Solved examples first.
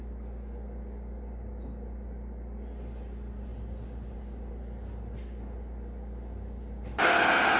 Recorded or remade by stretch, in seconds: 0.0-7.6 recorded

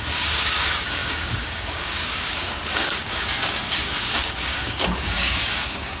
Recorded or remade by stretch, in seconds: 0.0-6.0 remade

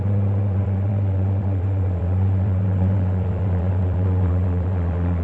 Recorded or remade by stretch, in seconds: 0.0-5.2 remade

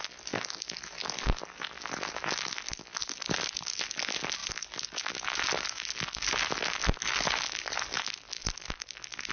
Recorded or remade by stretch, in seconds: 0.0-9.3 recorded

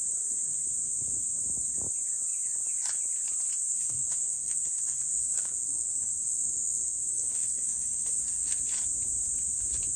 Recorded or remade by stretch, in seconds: 0.0-3.7 recorded; 3.7-8.6 remade; 8.6-10.0 recorded

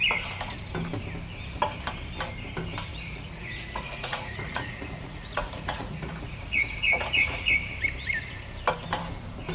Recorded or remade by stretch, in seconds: 0.0-2.9 recorded; 2.9-7.5 remade; 7.5-9.5 recorded

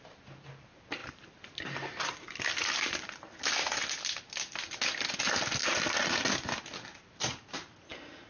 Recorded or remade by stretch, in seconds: 0.0-1.0 recorded; 1.0-3.5 remade; 3.5-5.6 recorded; 5.6-6.2 remade; 6.2-8.3 recorded

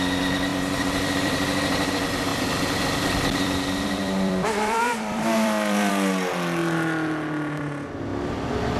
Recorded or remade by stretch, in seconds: 0.0-0.5 recorded; 0.5-1.9 remade; 1.9-2.3 recorded; 2.3-5.9 remade; 5.9-8.8 recorded